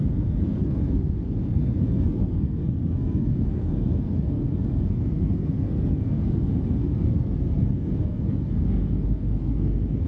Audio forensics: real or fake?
fake